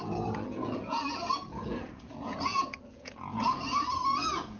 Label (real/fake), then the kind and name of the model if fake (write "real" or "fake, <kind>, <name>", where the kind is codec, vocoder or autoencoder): fake, vocoder, Vocos